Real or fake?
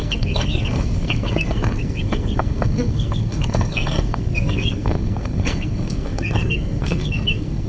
fake